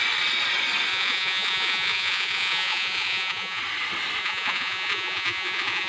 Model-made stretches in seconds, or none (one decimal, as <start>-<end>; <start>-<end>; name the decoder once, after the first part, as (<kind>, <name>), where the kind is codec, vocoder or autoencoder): 0.9-3.6 (vocoder, Vocos); 4.2-5.9